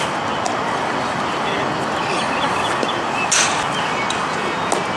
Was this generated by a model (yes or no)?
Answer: no